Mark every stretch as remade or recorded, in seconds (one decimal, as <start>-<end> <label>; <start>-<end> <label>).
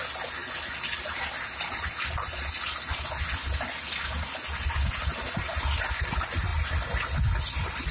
0.0-7.9 recorded